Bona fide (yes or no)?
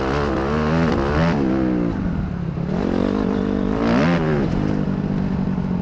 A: yes